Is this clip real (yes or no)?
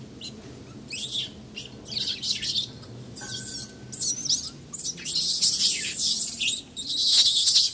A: yes